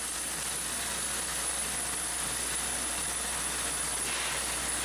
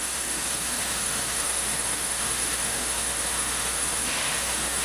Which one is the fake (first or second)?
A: second